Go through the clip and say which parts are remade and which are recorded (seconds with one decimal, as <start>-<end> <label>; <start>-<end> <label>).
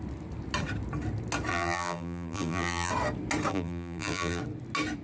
0.0-1.5 recorded; 1.5-2.9 remade; 2.9-3.5 recorded; 3.5-4.4 remade; 4.4-5.0 recorded